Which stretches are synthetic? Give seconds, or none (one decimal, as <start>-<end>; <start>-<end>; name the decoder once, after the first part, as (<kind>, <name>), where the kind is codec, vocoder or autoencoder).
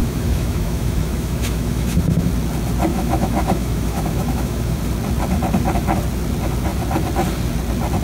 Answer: 0.0-2.3 (autoencoder, DAC-VAE); 2.9-4.8